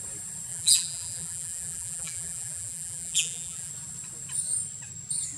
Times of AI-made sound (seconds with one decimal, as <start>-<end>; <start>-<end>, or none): 0.5-3.7